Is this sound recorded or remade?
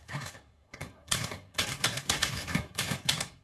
remade